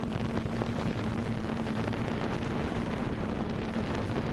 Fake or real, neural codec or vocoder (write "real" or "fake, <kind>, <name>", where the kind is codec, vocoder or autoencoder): fake, vocoder, BigVGAN v2